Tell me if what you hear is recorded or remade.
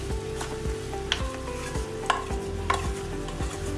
recorded